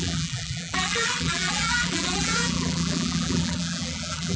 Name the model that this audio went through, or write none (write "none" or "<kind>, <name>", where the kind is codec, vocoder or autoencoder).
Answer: vocoder, BigVGAN v2